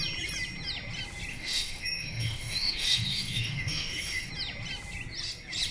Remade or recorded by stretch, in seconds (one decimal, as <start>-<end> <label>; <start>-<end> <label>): 0.0-1.3 recorded; 1.3-4.3 remade; 4.3-5.7 recorded